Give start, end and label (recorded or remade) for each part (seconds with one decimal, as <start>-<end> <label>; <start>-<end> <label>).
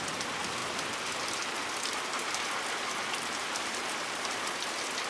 0.0-3.3 recorded; 3.3-4.5 remade; 4.5-5.1 recorded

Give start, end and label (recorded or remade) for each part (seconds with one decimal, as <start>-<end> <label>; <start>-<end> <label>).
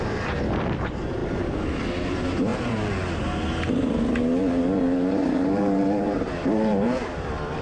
0.0-7.6 remade